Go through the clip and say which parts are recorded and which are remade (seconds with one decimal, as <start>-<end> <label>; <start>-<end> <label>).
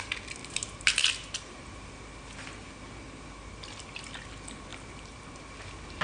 0.0-0.4 recorded; 0.4-1.1 remade; 1.1-4.7 recorded; 4.7-5.4 remade; 5.4-6.0 recorded